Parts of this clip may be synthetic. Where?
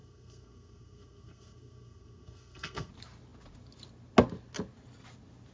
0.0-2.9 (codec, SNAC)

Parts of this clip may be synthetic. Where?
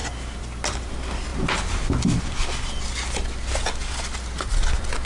1.3-2.7 (vocoder, BigVGAN v2)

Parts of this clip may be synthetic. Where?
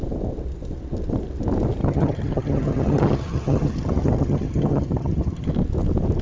1.8-5.5 (vocoder, HiFi-GAN)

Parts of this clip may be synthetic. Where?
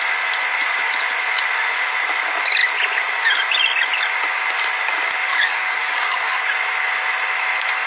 5.3-6.4 (codec, DAC)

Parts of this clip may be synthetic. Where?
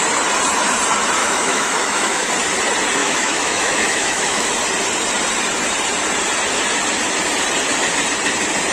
1.2-2.3 (autoencoder, DAC-VAE); 3.0-4.5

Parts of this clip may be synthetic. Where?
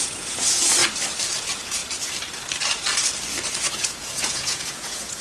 0.0-0.8 (vocoder, Vocos); 1.4-1.8; 3.7-5.2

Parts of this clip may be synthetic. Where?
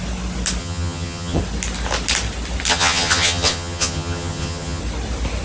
0.6-1.4 (vocoder, HiFi-GAN); 2.7-4.8